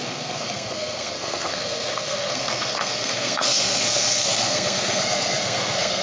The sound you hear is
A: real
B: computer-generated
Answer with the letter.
B